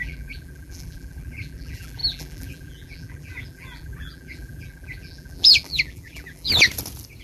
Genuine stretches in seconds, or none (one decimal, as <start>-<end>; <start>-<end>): 6.5-7.2